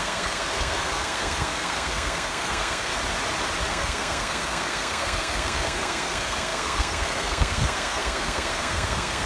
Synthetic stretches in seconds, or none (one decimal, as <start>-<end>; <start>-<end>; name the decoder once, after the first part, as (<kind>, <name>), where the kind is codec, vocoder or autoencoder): 0.0-2.9 (codec, SNAC); 3.7-9.3